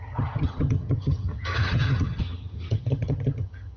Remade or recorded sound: remade